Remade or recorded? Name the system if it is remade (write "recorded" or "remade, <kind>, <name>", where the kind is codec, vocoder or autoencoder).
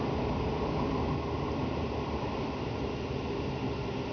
recorded